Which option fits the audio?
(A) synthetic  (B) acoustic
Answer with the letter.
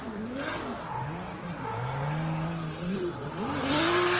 B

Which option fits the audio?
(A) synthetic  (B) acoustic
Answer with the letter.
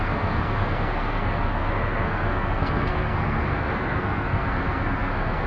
A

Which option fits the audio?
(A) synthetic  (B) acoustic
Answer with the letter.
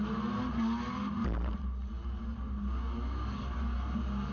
B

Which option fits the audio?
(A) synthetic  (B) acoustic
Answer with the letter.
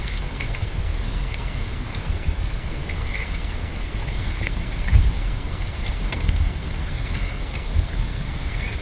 A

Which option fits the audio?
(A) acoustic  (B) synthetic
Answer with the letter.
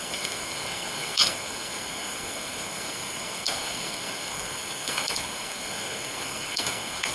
B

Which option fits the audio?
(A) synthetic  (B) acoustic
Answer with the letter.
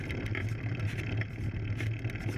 B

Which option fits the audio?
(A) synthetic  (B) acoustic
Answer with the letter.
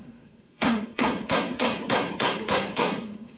A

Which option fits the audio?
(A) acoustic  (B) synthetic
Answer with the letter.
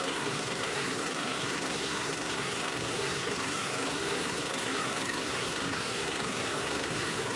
B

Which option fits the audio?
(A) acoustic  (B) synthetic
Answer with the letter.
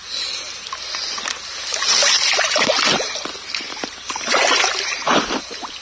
A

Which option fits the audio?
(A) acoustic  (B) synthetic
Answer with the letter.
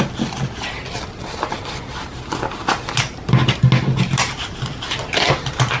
A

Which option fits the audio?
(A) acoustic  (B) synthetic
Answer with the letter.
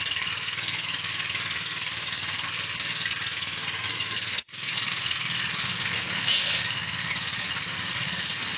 B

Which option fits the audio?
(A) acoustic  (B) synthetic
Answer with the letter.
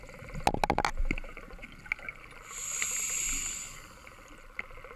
A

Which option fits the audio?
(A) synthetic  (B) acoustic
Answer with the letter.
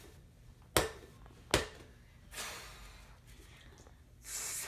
B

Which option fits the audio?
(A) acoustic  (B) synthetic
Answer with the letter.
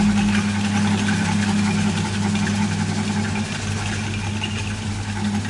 A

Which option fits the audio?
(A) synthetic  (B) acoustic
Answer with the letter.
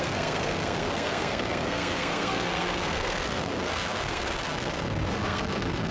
A